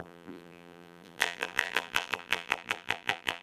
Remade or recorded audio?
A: remade